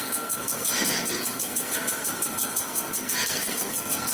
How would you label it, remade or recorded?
remade